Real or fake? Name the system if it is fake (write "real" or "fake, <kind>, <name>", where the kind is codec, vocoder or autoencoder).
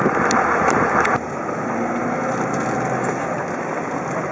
real